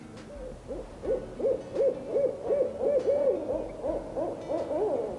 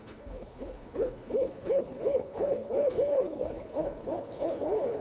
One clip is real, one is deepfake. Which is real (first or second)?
first